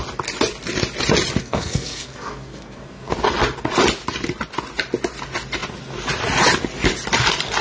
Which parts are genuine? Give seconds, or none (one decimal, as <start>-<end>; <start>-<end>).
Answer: 0.0-1.4; 3.1-7.6